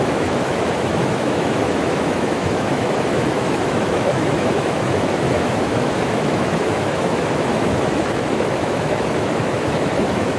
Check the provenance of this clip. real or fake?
fake